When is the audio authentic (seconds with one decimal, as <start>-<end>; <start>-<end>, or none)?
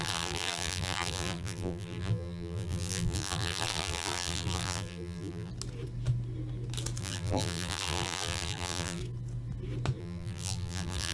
5.5-7.0; 9.0-10.0